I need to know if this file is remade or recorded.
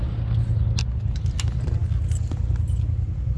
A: recorded